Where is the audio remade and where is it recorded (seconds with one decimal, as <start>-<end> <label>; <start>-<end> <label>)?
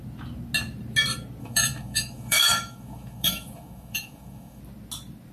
0.0-1.4 recorded; 1.4-4.6 remade; 4.6-5.3 recorded